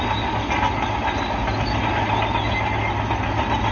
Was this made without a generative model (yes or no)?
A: yes